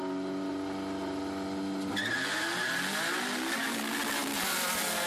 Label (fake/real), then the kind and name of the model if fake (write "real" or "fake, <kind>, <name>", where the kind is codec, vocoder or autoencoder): real